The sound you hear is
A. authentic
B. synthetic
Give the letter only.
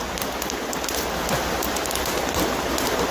A